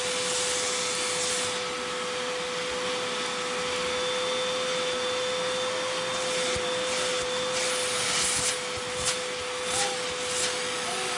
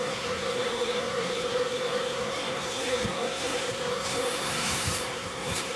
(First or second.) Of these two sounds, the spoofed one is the second